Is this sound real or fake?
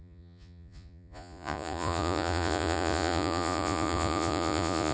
fake